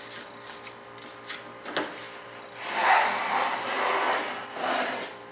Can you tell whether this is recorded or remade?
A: recorded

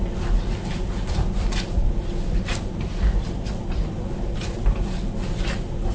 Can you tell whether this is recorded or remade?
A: recorded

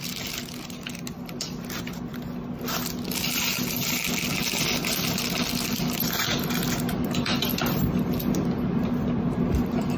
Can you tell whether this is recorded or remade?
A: recorded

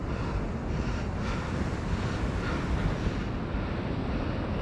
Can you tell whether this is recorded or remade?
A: recorded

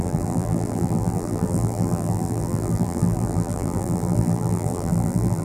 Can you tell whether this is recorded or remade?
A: remade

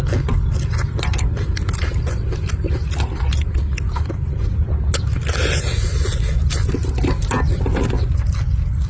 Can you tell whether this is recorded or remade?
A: recorded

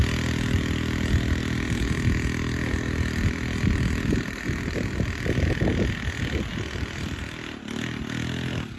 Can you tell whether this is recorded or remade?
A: recorded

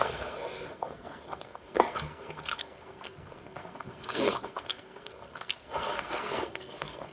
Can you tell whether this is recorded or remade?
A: remade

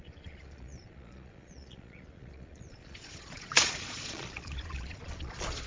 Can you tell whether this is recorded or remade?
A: remade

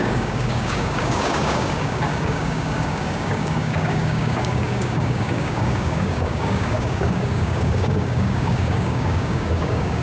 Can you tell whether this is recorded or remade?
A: remade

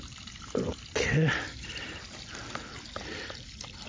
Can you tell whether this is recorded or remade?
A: recorded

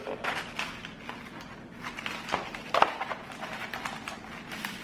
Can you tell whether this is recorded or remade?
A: recorded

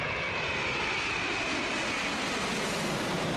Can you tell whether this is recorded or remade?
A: recorded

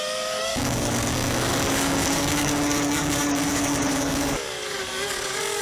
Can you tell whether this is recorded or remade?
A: remade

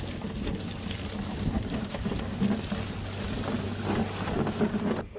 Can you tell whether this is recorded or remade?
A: recorded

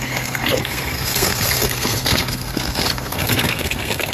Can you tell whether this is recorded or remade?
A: remade